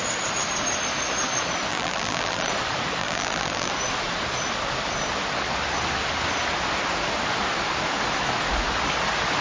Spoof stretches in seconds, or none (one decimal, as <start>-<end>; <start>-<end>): 1.7-2.5; 3.0-3.7